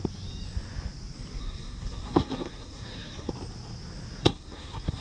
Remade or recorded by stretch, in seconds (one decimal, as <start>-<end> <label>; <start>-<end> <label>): 0.0-1.4 recorded; 1.4-3.3 remade; 3.3-4.2 recorded; 4.2-5.0 remade